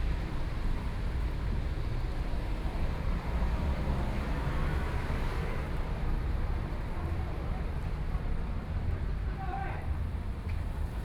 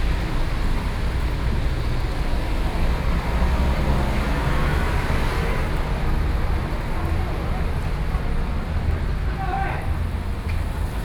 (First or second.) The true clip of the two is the second